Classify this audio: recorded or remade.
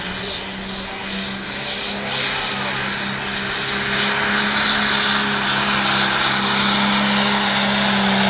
recorded